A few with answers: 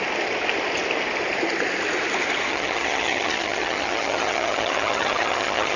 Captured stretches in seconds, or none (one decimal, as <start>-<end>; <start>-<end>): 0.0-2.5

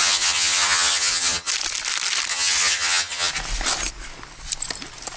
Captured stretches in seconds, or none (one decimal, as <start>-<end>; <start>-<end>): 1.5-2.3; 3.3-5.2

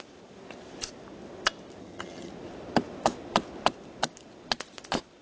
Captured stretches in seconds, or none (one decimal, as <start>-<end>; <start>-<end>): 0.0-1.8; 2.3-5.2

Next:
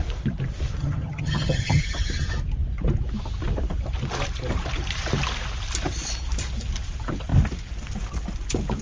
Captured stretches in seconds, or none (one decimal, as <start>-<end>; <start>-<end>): 0.0-0.8; 1.8-8.8